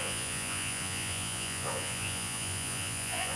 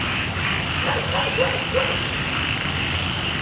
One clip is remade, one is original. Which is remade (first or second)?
first